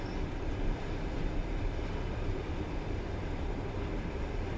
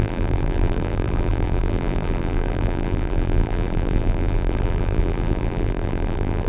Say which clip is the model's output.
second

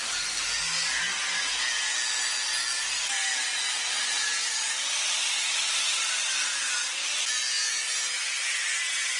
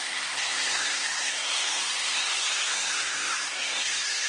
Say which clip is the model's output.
second